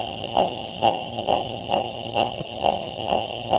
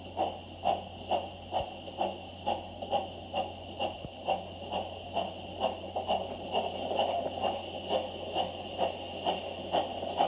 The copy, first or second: first